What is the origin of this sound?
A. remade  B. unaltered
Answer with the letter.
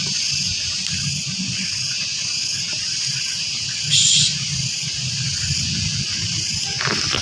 B